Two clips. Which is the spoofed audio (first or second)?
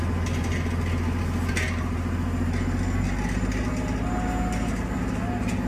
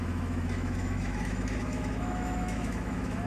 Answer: second